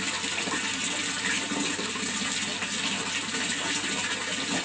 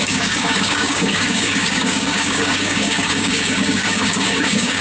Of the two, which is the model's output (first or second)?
second